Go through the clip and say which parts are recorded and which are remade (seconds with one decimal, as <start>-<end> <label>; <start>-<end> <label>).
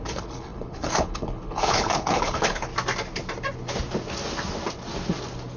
0.0-2.7 remade; 2.7-5.6 recorded